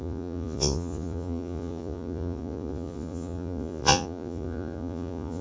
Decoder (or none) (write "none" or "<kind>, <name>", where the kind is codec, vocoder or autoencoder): vocoder, Vocos